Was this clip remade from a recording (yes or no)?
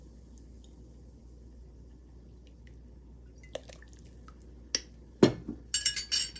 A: no